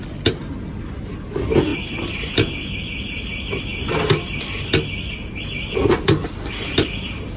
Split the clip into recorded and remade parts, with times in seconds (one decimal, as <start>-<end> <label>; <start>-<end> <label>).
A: 0.0-7.4 recorded